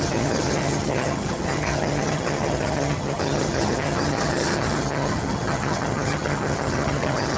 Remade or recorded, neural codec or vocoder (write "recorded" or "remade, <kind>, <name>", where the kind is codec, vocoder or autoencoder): remade, vocoder, HiFi-GAN